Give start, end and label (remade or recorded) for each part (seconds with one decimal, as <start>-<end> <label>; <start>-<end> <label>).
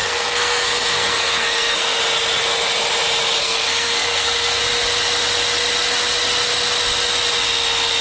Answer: 0.0-2.0 remade; 2.0-3.4 recorded; 3.4-4.6 remade; 4.6-8.0 recorded